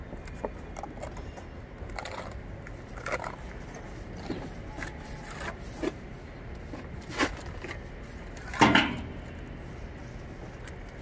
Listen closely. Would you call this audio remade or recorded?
recorded